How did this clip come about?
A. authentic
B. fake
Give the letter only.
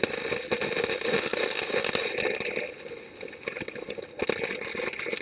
A